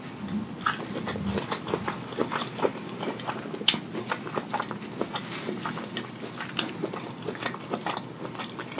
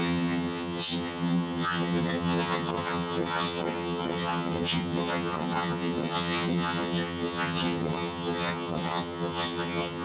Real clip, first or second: first